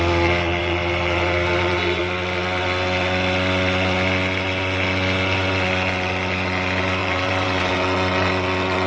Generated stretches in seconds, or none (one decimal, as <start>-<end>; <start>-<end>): 0.6-2.0; 7.0-7.7